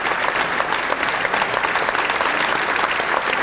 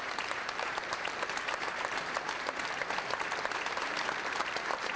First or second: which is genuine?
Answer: first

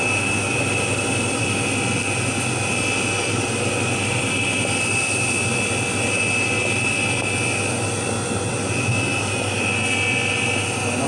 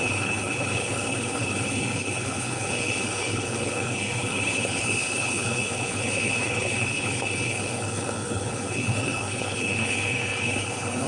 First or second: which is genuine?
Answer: first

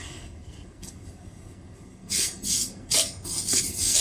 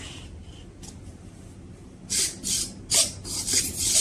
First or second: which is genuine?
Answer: second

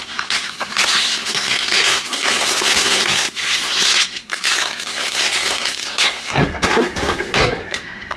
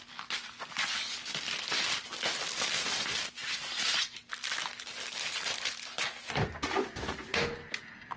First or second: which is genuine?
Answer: second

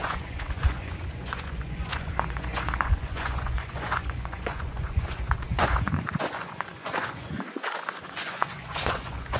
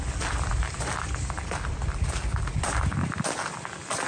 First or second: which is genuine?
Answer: second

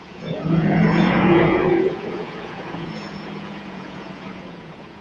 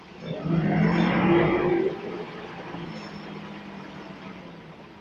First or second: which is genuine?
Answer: second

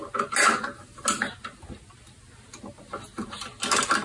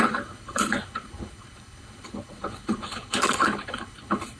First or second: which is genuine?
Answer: first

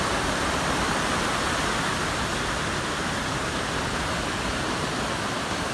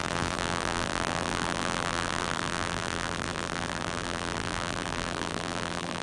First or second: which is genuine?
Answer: first